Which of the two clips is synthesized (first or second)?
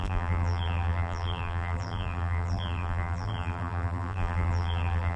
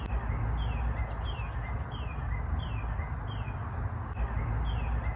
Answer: first